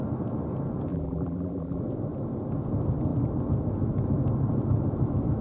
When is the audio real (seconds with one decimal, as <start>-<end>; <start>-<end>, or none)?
0.0-0.9; 1.8-5.4